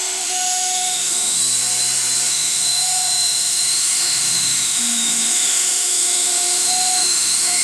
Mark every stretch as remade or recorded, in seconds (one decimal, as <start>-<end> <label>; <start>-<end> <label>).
0.0-1.4 remade; 1.4-2.3 recorded; 2.3-7.6 remade

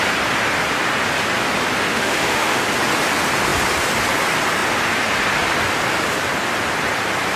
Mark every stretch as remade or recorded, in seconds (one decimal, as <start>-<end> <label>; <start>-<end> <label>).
0.0-1.9 recorded; 1.9-2.6 remade; 2.6-7.4 recorded

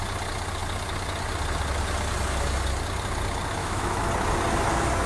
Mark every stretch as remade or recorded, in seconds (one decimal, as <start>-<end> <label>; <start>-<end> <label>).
0.0-3.6 recorded; 3.6-4.1 remade; 4.1-5.1 recorded

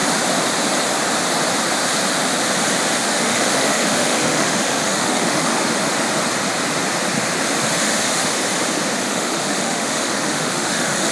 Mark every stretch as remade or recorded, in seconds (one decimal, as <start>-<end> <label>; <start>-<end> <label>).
0.0-3.0 recorded; 3.0-5.5 remade; 5.5-7.7 recorded; 7.7-8.3 remade; 8.3-9.0 recorded; 9.0-11.1 remade